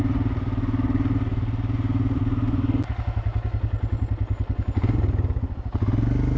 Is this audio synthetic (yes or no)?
no